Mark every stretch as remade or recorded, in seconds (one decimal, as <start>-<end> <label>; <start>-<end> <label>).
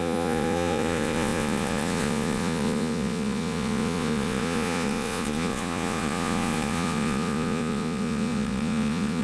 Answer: 0.0-9.2 remade